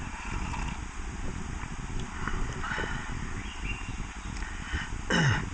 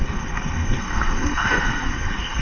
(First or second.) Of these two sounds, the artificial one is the second